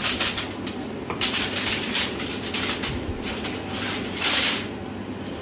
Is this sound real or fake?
real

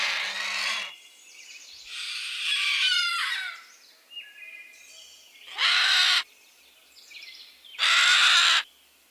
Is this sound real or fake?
fake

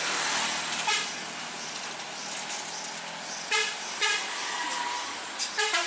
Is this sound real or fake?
real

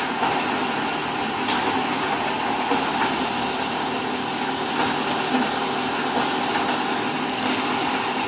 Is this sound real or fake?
real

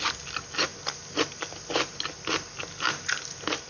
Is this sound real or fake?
real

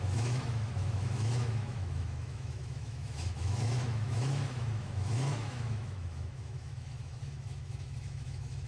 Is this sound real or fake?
fake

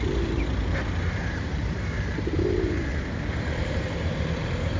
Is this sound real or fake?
fake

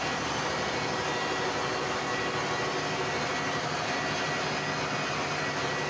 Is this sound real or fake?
real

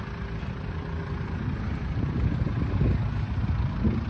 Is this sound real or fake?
real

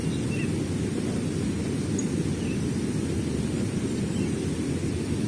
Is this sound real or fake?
real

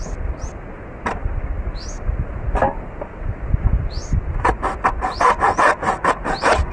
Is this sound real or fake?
real